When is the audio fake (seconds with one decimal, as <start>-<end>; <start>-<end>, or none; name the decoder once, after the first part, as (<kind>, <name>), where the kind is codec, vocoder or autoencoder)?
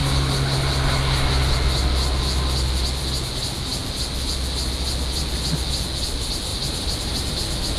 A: 6.5-7.3 (vocoder, BigVGAN v2)